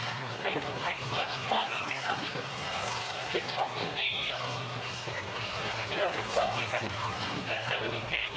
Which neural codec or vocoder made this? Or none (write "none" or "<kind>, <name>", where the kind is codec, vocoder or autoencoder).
codec, SNAC